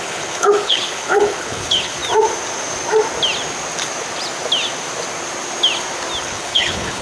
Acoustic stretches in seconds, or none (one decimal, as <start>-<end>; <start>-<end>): 2.0-6.2